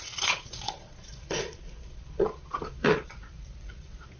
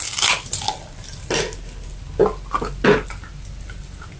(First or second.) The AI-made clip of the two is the first